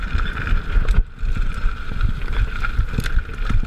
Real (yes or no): yes